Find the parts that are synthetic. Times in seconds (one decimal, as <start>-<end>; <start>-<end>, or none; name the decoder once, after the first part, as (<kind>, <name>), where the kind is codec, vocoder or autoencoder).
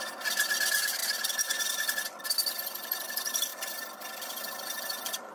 0.0-5.3 (vocoder, BigVGAN v2)